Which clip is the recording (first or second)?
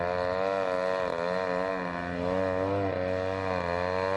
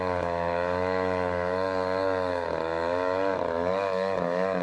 first